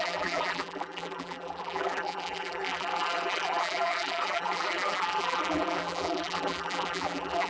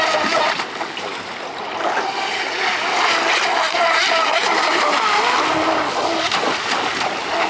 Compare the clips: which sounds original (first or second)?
second